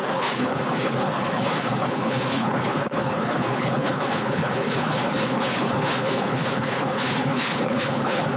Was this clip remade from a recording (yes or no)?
yes